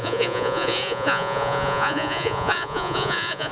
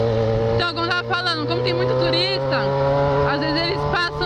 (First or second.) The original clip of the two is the second